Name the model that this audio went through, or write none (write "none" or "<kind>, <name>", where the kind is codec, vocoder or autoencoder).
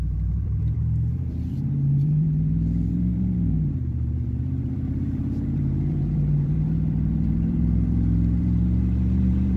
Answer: vocoder, BigVGAN v2